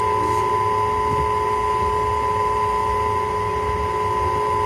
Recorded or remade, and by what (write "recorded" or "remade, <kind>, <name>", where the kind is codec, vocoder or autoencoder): recorded